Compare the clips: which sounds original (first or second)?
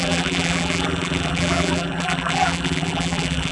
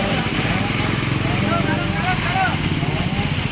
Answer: second